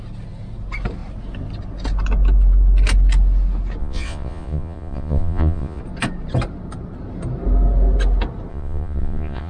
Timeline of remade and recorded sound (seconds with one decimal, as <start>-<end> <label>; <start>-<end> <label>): 0.0-3.8 recorded; 3.8-5.8 remade; 5.8-8.5 recorded; 8.5-9.5 remade